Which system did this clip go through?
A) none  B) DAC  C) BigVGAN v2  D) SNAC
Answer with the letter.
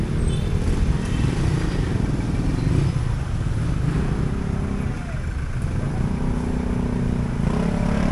A